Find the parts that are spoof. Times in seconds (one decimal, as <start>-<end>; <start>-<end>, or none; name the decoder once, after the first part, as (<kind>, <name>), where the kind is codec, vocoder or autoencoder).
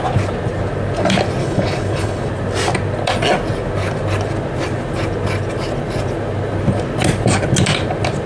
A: 1.4-2.3 (codec, HILCodec)